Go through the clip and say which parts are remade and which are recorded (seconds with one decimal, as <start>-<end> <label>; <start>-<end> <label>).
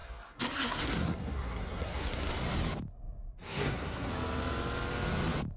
0.0-2.3 remade; 2.3-3.4 recorded; 3.4-4.1 remade; 4.1-5.6 recorded